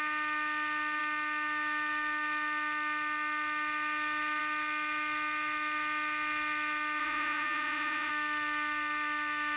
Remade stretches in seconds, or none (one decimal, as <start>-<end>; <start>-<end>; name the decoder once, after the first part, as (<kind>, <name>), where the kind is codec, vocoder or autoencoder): 7.0-8.1 (vocoder, Vocos)